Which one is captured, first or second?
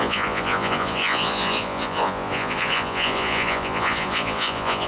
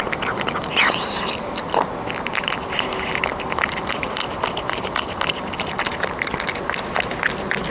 second